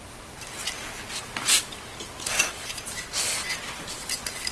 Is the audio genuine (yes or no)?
no